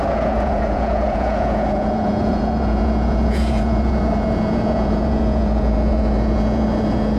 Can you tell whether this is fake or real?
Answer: fake